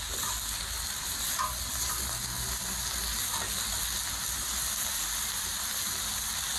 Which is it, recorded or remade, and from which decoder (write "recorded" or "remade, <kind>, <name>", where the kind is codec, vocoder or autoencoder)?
recorded